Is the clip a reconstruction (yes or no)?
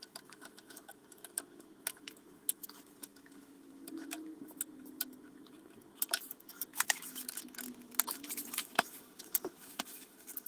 yes